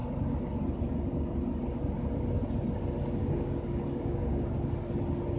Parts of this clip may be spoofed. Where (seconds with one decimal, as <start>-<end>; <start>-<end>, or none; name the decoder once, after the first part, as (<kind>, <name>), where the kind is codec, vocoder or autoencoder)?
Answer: 3.2-4.5 (codec, DAC)